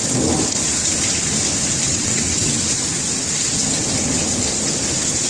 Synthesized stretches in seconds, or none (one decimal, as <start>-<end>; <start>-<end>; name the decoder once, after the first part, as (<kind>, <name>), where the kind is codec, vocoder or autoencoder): 1.9-2.6 (vocoder, WaveNeXt)